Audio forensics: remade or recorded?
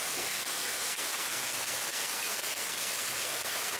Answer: remade